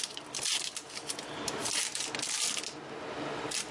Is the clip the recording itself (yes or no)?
yes